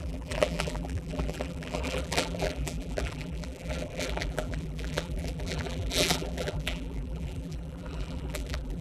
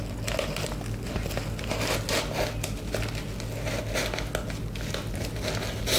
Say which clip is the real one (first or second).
second